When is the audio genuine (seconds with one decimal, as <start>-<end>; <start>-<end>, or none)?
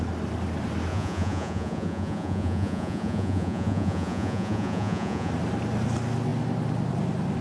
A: 0.0-0.9; 5.3-7.4